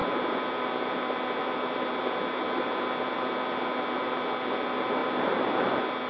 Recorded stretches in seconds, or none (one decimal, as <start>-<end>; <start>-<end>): 0.0-6.1